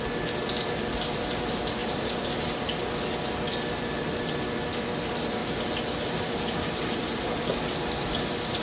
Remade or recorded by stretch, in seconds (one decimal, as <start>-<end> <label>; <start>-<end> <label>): 0.0-1.8 recorded; 1.8-2.4 remade; 2.4-5.4 recorded; 5.4-7.2 remade; 7.2-8.6 recorded

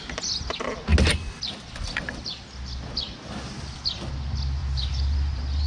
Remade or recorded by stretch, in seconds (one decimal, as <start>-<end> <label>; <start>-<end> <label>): 0.0-4.6 recorded; 4.6-5.7 remade